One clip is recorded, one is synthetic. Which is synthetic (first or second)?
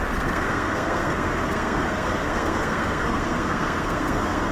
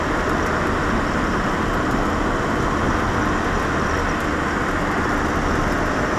first